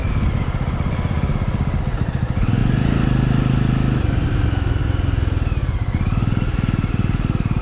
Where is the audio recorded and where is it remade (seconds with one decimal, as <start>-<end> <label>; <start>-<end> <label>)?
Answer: 0.0-7.6 recorded